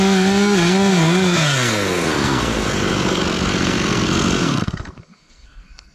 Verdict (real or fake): fake